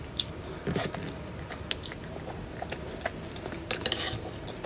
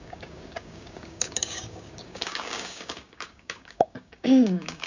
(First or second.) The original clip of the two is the first